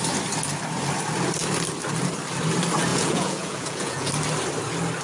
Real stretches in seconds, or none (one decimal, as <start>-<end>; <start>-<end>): 0.0-2.9; 4.1-5.0